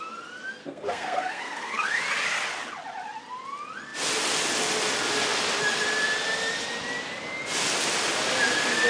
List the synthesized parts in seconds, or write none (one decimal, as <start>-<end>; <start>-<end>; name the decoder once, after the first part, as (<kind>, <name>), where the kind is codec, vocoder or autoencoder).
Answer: 0.6-2.0 (codec, SNAC)